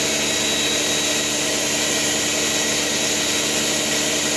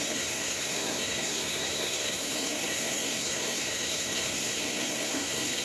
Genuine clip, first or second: first